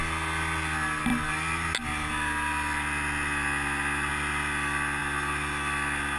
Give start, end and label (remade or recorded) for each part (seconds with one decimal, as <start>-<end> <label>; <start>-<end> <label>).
0.0-6.2 recorded